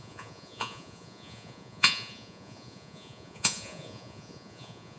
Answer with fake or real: fake